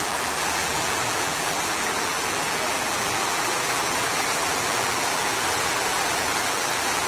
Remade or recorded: remade